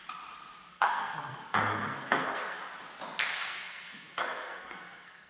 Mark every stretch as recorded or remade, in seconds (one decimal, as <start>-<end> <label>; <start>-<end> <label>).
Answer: 0.0-0.7 recorded; 0.7-2.6 remade; 2.6-3.3 recorded; 3.3-5.3 remade